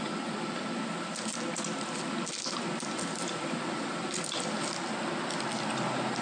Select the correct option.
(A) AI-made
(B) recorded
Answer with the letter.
B